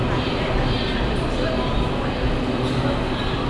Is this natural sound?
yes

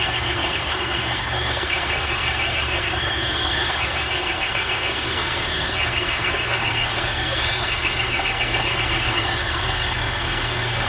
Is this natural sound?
no